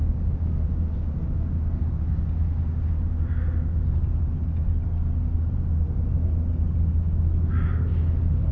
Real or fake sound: real